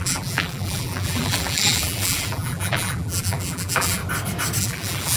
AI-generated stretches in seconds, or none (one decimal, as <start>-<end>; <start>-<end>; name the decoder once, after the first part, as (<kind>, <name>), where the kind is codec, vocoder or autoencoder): 0.0-4.0 (vocoder, BigVGAN v2); 4.6-5.2